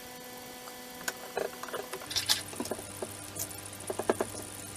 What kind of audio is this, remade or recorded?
recorded